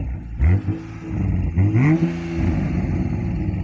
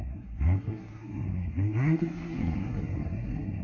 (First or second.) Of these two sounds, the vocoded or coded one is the second